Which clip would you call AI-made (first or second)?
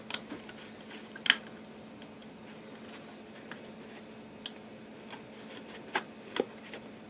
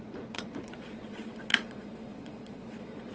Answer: second